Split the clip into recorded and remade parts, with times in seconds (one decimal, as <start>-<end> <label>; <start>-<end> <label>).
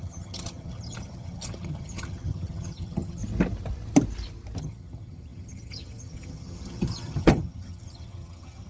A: 0.0-3.2 remade; 3.2-4.6 recorded; 4.6-8.7 remade